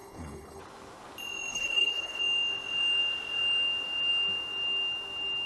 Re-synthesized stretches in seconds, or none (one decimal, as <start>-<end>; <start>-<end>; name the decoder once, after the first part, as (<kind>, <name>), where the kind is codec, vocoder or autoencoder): 0.0-0.6 (codec, HILCodec); 1.5-2.2